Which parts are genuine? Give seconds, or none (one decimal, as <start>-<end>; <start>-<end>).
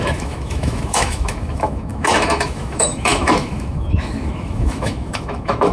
none